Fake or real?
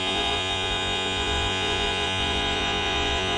fake